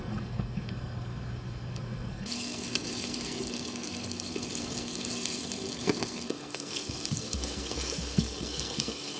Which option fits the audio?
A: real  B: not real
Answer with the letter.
B